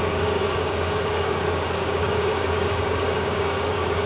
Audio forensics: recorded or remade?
remade